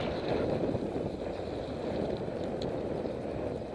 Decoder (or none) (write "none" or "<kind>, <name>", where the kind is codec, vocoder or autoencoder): none